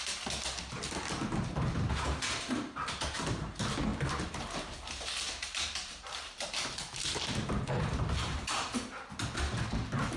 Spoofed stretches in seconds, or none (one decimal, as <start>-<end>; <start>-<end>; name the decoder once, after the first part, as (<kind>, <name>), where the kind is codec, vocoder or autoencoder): 3.9-8.7 (vocoder, BigVGAN v2)